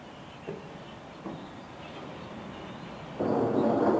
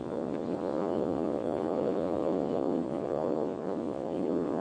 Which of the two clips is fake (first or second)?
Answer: second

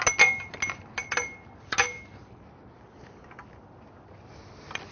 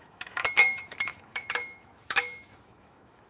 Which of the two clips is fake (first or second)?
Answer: second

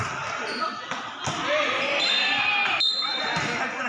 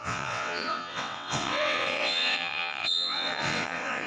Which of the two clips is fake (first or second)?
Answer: second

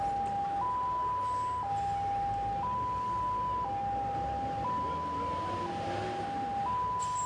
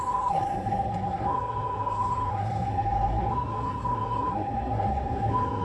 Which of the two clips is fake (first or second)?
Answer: second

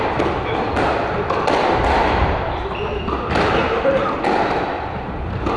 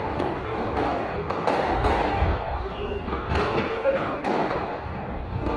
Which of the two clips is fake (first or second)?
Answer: second